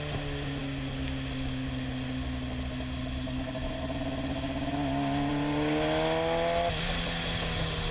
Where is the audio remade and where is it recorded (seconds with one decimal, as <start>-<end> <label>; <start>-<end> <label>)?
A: 0.0-7.9 recorded